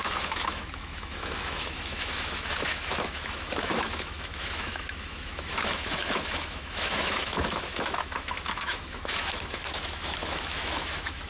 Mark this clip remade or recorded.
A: remade